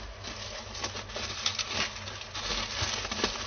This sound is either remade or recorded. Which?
recorded